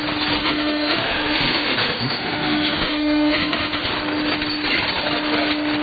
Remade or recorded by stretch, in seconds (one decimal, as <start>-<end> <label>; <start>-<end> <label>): 0.0-0.4 recorded; 0.4-3.9 remade; 3.9-5.8 recorded